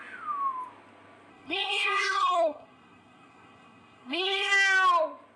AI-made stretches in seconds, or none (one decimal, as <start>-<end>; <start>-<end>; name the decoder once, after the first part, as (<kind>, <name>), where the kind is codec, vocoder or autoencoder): 1.3-4.5 (codec, SNAC)